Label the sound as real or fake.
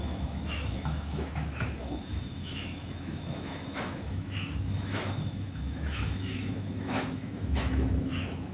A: fake